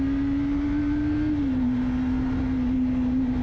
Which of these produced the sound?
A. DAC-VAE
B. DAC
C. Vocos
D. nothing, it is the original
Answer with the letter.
D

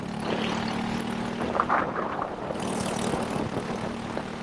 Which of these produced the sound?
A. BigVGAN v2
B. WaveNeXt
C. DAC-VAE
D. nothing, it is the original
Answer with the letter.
D